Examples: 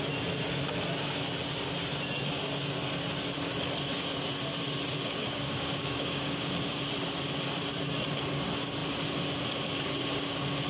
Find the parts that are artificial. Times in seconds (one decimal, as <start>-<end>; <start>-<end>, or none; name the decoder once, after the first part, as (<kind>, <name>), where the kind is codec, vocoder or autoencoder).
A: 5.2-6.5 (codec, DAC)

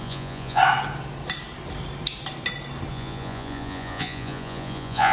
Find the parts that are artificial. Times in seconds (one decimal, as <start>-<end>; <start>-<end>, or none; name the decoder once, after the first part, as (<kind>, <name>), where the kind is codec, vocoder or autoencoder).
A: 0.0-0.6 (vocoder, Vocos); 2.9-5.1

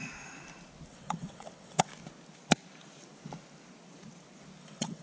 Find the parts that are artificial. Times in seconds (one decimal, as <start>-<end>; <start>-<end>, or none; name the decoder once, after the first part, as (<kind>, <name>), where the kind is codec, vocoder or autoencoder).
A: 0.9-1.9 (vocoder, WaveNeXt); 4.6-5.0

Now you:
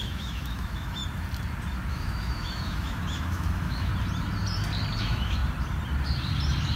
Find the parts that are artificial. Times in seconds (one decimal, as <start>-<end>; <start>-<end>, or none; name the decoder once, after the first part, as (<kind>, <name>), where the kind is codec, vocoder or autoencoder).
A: 0.0-1.0 (autoencoder, DAC-VAE); 1.9-3.9; 5.0-5.4

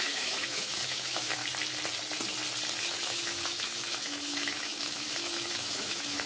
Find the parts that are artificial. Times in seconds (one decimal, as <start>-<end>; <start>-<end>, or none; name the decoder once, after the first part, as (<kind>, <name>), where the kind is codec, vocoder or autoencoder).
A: 0.0-1.4 (autoencoder, DAC-VAE); 2.8-6.3

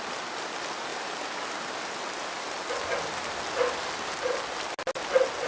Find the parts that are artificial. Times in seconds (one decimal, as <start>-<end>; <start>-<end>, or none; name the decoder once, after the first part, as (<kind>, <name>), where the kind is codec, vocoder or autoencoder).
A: 0.9-4.2 (vocoder, BigVGAN v2)

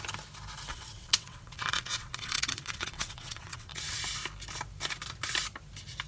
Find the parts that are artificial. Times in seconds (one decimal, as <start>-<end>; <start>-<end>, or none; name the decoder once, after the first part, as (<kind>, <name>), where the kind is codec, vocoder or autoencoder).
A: 0.7-4.0 (vocoder, WaveNeXt)

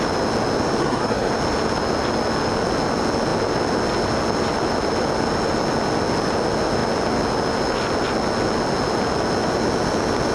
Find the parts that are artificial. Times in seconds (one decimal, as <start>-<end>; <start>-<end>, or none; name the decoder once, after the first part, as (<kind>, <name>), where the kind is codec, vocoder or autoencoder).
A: 0.8-1.3 (codec, SNAC)